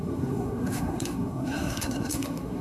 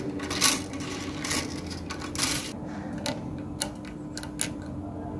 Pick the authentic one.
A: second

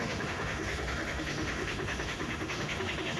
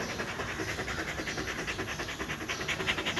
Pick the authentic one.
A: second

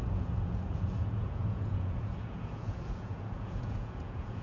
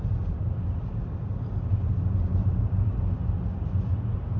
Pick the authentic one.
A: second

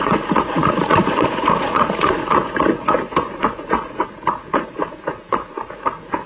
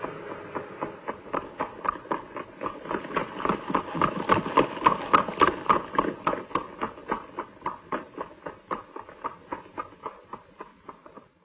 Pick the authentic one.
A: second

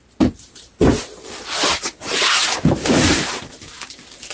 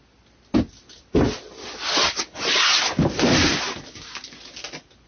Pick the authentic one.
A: second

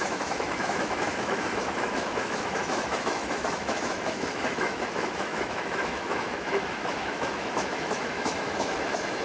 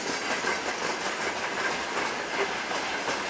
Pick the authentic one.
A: second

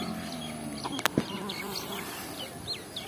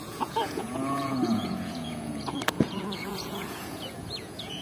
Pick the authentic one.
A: first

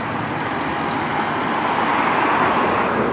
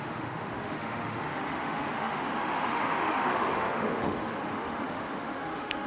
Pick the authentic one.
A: first